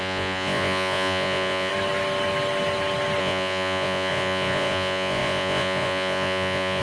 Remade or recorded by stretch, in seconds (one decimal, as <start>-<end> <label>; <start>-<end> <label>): 0.0-1.7 remade; 1.7-3.2 recorded; 3.2-6.8 remade